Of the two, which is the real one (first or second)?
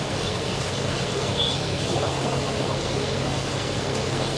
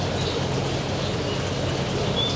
second